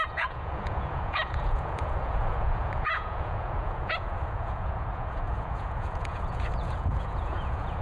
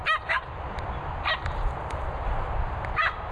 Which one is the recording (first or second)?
second